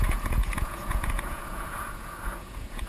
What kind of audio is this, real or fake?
fake